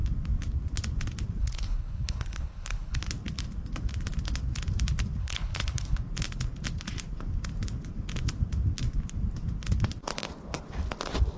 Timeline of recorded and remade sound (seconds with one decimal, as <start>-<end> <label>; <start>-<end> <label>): 0.0-1.4 recorded; 1.4-3.0 remade; 3.0-5.2 recorded; 5.2-6.0 remade; 6.0-11.4 recorded